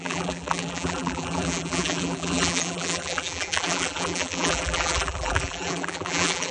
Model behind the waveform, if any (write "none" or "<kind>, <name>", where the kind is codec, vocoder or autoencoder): vocoder, BigVGAN v2